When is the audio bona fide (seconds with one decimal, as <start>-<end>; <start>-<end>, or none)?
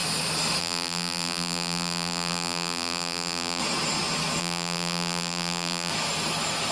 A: 0.0-0.6; 3.6-4.4; 5.9-6.7